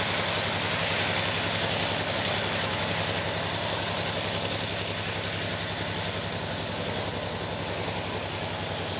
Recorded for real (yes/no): yes